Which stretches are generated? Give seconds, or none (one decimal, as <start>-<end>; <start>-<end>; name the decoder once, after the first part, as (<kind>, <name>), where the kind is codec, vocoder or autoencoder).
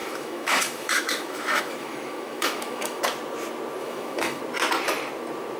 0.0-3.0 (autoencoder, DAC-VAE); 3.8-4.4